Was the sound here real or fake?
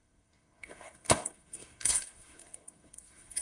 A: fake